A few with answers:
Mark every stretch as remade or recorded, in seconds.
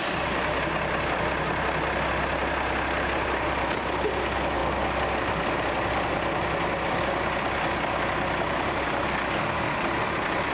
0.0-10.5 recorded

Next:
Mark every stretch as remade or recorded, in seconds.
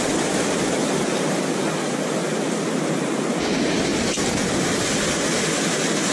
0.0-6.1 recorded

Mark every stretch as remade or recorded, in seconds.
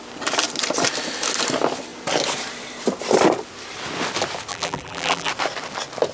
0.0-4.5 recorded; 4.5-5.3 remade; 5.3-6.1 recorded